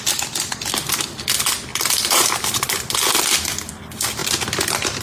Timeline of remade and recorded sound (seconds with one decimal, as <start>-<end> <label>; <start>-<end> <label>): 0.0-1.7 recorded; 1.7-2.9 remade; 2.9-5.0 recorded